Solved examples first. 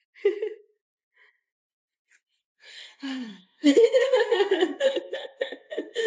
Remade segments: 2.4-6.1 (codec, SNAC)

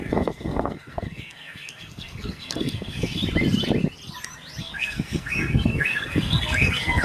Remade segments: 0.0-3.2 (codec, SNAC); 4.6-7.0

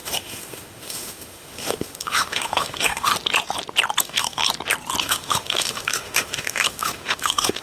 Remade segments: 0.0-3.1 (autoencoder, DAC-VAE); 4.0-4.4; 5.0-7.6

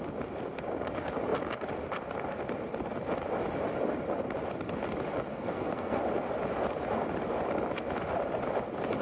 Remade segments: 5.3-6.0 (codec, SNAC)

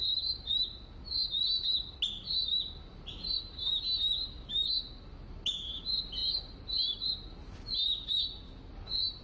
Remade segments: none

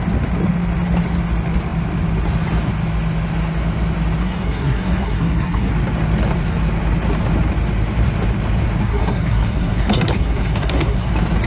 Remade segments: 4.2-5.7 (codec, SNAC); 8.8-11.1

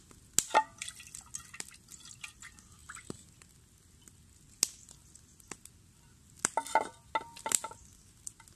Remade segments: none

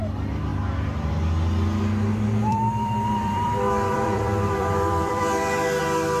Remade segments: 0.5-1.1 (vocoder, BigVGAN v2); 2.1-5.8